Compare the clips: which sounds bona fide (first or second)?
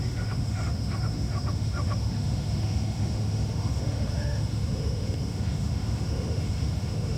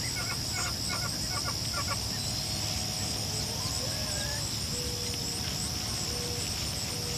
second